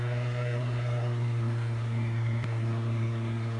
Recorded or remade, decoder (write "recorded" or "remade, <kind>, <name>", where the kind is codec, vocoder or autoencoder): remade, codec, SNAC